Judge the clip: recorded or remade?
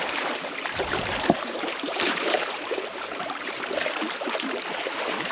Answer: remade